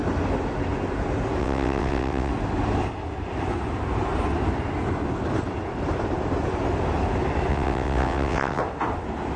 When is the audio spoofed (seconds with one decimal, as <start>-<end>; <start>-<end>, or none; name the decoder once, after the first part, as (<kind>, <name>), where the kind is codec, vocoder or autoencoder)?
1.4-2.3 (vocoder, WaveNeXt); 7.5-8.6